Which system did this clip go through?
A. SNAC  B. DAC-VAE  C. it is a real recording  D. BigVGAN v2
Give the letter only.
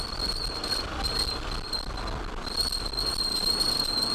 C